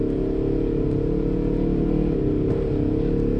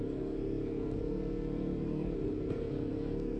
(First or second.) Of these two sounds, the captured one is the first